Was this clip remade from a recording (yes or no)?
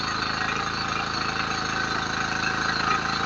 no